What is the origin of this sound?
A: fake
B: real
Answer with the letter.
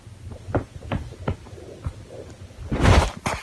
B